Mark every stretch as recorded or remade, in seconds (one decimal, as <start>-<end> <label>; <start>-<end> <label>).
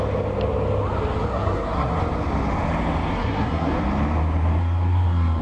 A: 0.0-1.3 recorded; 1.3-2.0 remade; 2.0-3.1 recorded; 3.1-3.7 remade; 3.7-4.6 recorded; 4.6-5.4 remade